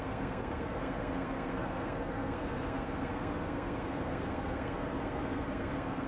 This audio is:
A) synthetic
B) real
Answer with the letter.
A